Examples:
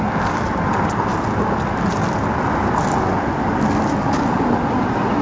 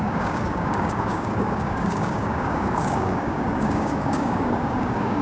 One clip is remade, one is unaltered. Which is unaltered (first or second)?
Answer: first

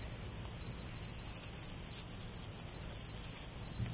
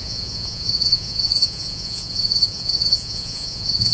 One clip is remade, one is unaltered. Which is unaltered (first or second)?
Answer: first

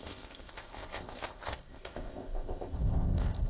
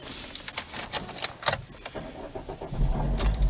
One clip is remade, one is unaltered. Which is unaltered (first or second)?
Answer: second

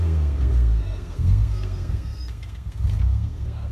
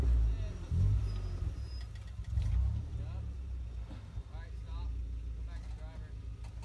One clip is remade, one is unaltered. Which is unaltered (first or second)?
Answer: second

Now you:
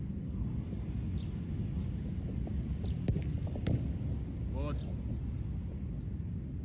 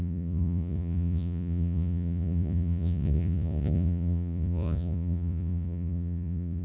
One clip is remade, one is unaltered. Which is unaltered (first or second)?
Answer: first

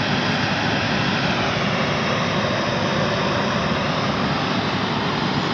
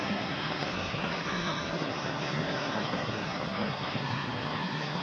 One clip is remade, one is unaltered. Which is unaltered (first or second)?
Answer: first